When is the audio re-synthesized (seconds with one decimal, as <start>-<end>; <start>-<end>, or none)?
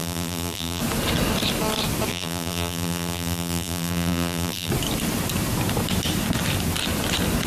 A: 0.0-0.8; 2.1-4.7